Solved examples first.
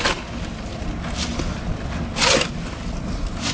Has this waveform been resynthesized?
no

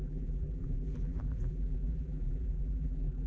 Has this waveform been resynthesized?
yes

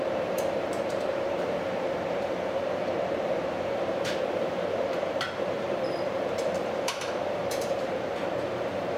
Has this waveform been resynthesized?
yes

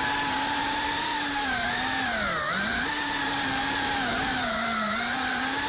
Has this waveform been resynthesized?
yes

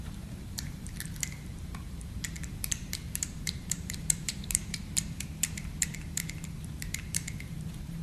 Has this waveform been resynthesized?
yes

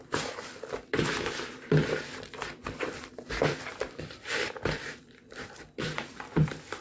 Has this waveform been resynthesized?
yes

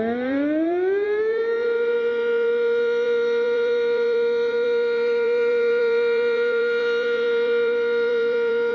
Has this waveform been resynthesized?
yes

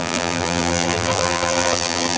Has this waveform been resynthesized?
yes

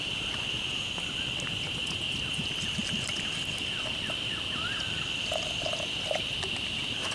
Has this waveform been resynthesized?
yes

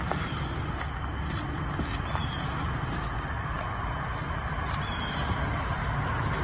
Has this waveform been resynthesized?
no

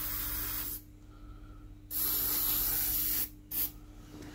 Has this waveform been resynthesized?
no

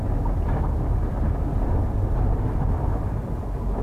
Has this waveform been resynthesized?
no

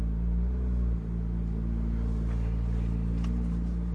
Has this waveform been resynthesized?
no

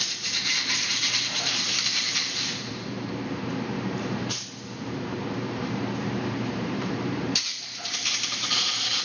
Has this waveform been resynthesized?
yes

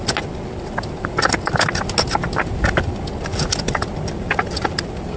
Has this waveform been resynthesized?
no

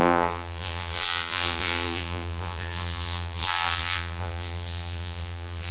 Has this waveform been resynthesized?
yes